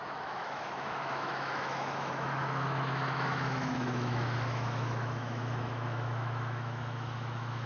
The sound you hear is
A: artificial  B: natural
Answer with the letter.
A